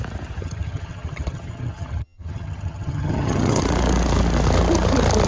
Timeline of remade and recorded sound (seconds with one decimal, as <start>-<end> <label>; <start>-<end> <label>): 0.0-0.4 recorded; 0.4-3.6 remade; 3.6-5.3 recorded

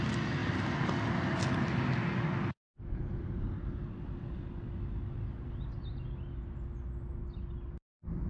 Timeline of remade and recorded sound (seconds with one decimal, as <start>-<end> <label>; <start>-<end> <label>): 0.0-8.3 recorded

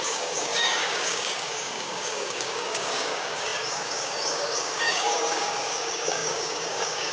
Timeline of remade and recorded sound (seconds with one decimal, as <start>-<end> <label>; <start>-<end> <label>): 0.0-7.1 remade

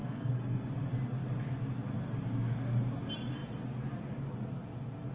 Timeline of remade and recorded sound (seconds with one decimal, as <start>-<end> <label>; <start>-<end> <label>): 0.0-0.7 remade; 0.7-5.1 recorded

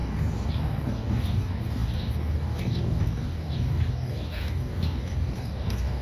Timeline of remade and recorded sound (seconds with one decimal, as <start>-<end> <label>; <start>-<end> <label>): 0.0-6.0 remade

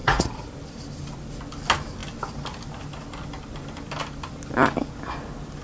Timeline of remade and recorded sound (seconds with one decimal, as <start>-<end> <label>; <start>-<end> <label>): 0.0-0.5 remade; 0.5-5.6 recorded

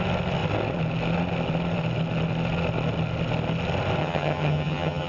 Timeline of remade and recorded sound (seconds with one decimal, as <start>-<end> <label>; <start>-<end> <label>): 0.0-4.0 recorded; 4.0-5.1 remade